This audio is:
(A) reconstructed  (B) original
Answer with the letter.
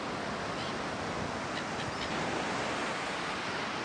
B